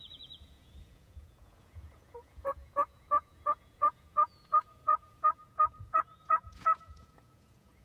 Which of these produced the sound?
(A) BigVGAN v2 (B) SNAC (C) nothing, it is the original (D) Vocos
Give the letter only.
D